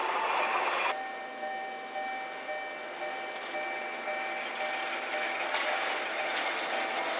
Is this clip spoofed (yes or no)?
no